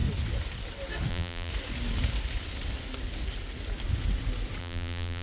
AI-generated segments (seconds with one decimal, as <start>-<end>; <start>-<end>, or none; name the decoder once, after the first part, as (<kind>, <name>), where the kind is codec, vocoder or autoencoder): 1.1-1.5 (vocoder, BigVGAN v2); 4.6-5.2

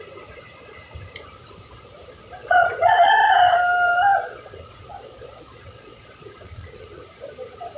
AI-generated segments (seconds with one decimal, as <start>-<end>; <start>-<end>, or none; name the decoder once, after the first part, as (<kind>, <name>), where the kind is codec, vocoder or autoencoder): 2.4-3.1 (vocoder, Vocos); 4.1-7.0